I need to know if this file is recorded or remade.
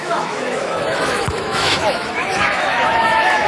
remade